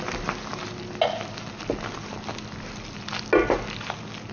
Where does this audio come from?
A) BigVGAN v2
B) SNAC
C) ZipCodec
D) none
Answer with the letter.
D